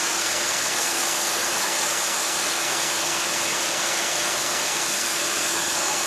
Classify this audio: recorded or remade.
remade